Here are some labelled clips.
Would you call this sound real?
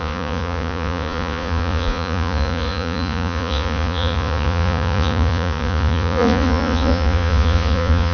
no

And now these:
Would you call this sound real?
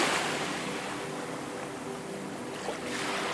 yes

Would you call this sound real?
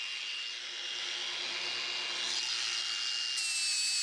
yes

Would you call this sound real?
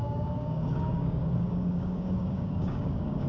no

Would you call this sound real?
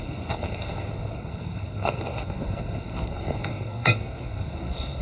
no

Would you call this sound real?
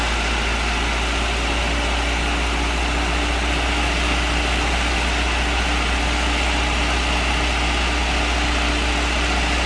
yes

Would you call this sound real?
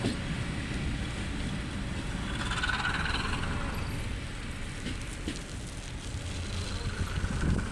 yes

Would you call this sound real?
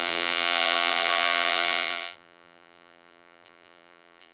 no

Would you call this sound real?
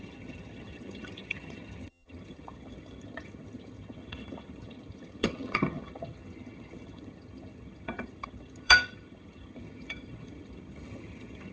no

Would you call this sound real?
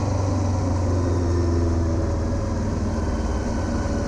yes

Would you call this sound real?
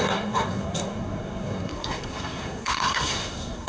no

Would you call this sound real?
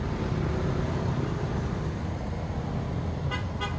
yes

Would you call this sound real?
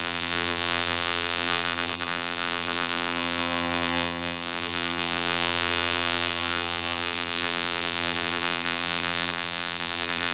no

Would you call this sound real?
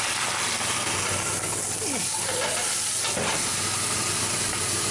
yes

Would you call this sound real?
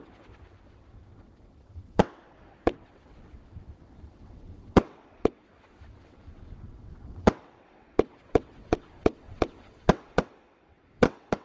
no